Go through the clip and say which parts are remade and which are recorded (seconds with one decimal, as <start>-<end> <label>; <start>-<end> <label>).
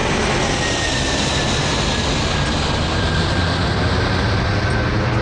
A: 0.0-5.2 recorded